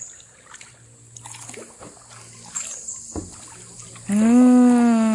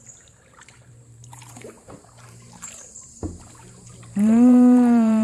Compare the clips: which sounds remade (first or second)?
second